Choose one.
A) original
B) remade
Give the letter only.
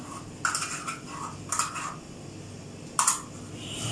A